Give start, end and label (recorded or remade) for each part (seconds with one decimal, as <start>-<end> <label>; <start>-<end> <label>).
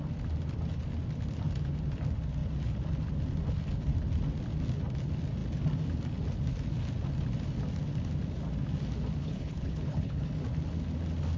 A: 0.0-9.2 recorded; 9.2-10.3 remade; 10.3-11.4 recorded